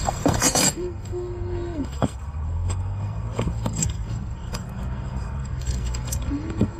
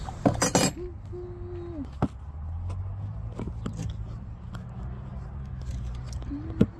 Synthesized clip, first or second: first